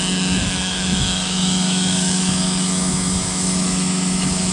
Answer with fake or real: fake